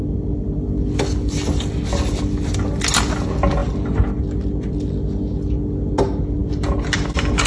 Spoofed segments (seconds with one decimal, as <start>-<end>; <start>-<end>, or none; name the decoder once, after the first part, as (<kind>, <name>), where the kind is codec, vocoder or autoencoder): none